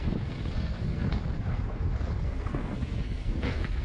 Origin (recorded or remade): remade